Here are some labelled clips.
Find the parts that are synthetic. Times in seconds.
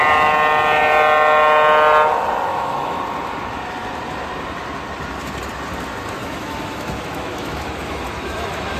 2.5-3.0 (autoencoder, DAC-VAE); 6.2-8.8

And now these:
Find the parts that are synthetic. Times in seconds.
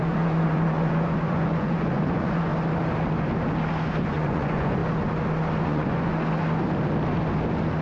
0.0-2.5 (vocoder, Vocos); 4.0-4.8; 5.6-6.1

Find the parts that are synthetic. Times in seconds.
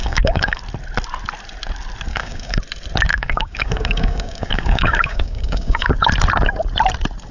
0.0-0.6 (codec, DAC); 2.1-2.6; 3.1-5.9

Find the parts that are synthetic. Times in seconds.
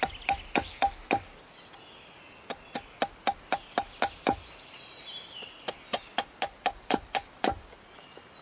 none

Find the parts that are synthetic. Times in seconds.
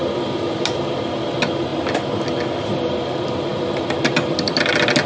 none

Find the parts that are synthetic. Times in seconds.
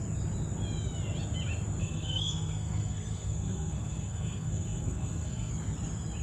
1.8-5.5 (codec, SNAC)